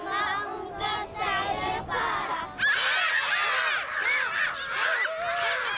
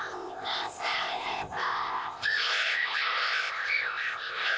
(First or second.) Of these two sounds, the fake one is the second